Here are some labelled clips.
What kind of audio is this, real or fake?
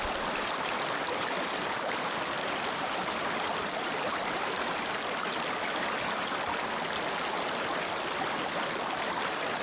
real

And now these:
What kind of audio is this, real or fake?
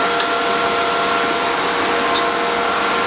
real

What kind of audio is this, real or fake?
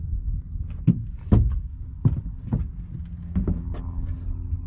real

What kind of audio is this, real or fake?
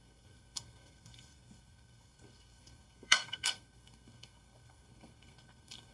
fake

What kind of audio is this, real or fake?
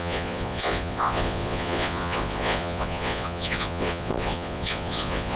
fake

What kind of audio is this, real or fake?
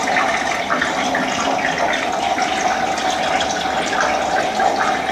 real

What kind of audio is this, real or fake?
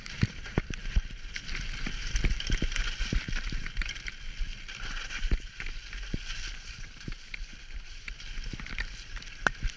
real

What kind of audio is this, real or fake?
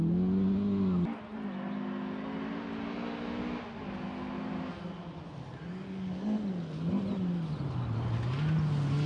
real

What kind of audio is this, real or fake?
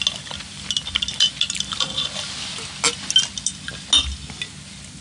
real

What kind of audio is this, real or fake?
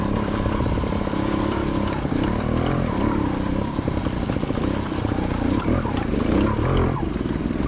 fake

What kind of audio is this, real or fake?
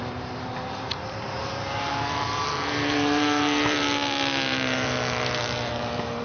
fake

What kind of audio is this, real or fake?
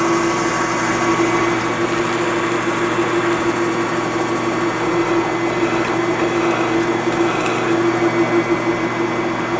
real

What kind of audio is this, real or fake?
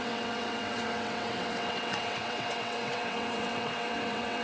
fake